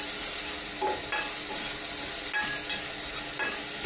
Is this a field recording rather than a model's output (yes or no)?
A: yes